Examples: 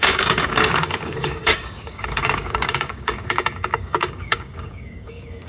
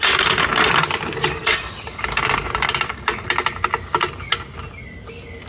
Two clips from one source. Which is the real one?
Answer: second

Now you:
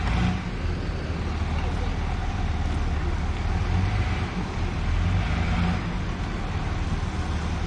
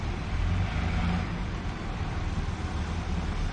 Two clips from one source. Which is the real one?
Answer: first